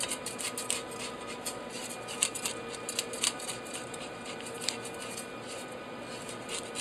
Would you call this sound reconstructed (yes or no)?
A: no